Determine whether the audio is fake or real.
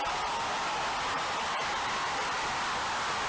real